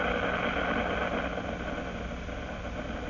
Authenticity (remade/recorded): recorded